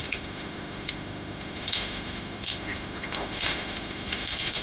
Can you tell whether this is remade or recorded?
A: remade